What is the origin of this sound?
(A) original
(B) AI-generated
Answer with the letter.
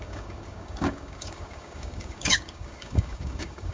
B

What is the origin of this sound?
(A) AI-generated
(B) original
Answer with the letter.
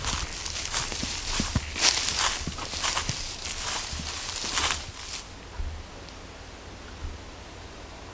B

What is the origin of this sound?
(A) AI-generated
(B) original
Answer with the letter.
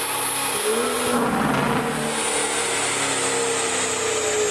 B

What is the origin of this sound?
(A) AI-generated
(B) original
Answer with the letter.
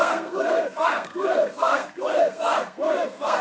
A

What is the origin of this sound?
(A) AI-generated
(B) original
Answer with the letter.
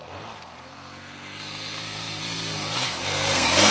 A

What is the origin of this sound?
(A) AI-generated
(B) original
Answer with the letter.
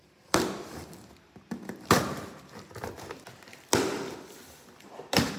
A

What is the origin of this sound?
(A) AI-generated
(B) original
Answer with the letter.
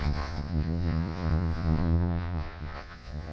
A